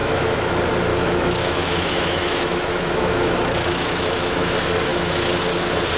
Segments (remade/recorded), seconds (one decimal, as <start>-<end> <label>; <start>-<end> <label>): 0.0-0.5 remade; 0.5-0.9 recorded; 0.9-4.5 remade; 4.5-4.9 recorded; 4.9-5.4 remade; 5.4-6.0 recorded